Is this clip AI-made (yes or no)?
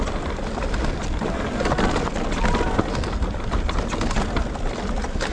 no